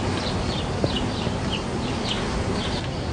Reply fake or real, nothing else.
real